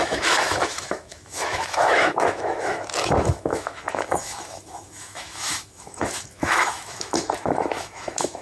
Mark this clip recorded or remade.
remade